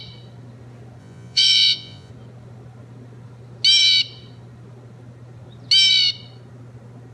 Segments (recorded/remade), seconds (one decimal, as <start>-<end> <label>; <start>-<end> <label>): 0.0-1.0 recorded; 1.0-2.1 remade; 2.1-7.1 recorded